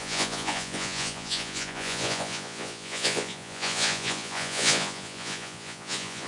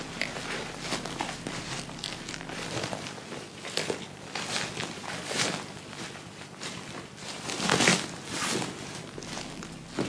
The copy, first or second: first